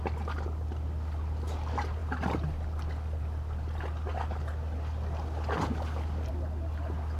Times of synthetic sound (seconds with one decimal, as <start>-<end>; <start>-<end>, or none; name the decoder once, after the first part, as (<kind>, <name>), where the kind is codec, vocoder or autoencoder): none